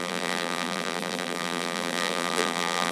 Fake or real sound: fake